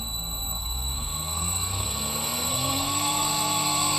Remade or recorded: remade